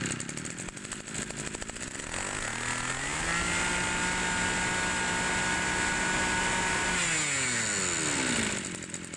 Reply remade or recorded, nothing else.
recorded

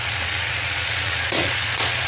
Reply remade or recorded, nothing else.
remade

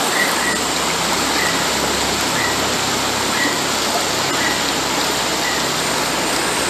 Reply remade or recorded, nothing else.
recorded